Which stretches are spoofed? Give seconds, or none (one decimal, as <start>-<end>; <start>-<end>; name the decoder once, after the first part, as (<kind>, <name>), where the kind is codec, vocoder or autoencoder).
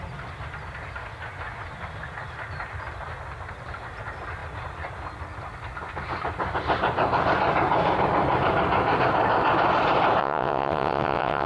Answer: 10.2-11.5 (vocoder, WaveNeXt)